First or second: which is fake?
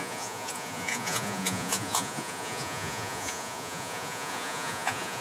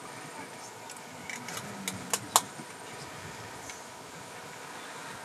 first